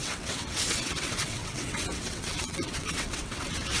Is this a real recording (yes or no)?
no